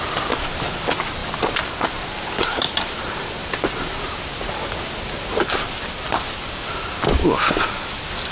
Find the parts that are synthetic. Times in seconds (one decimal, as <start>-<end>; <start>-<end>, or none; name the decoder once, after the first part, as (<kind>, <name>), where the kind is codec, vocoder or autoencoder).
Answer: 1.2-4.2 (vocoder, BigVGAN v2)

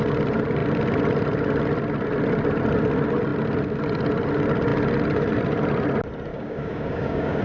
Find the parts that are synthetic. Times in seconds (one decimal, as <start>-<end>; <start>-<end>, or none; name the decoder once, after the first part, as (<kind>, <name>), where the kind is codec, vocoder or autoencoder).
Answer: 6.3-7.4 (codec, DAC)

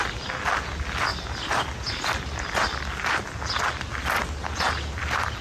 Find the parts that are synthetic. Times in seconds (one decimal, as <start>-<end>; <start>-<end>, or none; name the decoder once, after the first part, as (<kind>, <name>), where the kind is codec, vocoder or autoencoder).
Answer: none

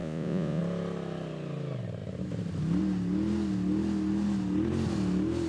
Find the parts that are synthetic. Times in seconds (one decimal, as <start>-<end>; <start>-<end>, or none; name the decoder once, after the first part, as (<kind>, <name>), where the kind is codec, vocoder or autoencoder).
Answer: 0.0-0.6 (vocoder, Vocos)